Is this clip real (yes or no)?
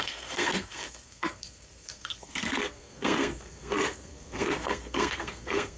no